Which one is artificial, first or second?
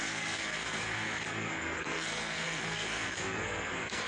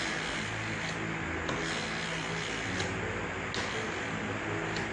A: first